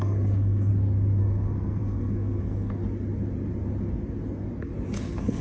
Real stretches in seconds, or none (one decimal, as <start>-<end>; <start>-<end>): 0.7-1.2; 2.8-5.0